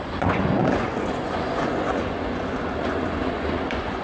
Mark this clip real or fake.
fake